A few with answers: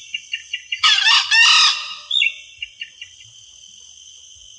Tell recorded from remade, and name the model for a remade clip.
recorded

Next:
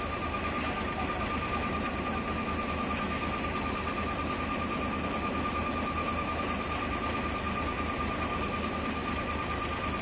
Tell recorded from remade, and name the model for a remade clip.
recorded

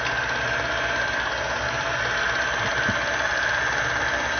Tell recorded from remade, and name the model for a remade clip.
recorded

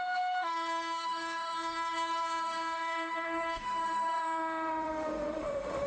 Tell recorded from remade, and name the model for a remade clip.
remade, autoencoder, DAC-VAE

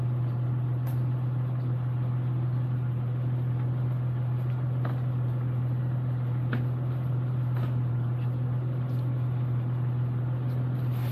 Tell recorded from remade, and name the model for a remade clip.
recorded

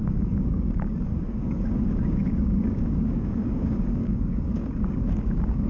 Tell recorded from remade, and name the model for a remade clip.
remade, codec, DAC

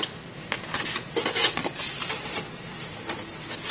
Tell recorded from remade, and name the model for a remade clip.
recorded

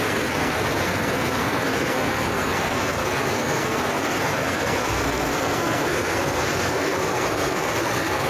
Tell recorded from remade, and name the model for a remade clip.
remade, codec, SNAC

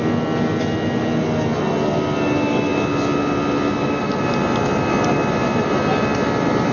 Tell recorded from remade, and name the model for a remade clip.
recorded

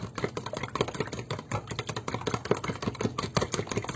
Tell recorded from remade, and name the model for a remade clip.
recorded